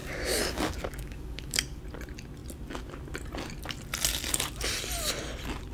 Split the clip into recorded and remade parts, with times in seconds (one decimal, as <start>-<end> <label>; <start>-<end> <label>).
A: 0.0-1.8 remade; 1.8-5.7 recorded